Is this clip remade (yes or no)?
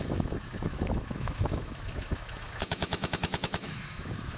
yes